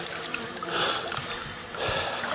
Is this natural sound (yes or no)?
yes